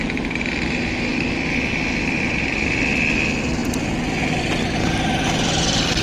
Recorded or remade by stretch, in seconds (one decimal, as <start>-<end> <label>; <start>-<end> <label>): 0.0-6.0 recorded